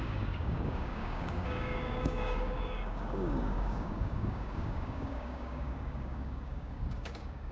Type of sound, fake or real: fake